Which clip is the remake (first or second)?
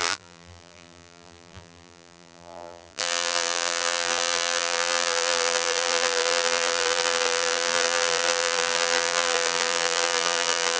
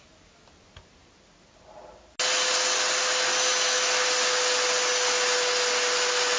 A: first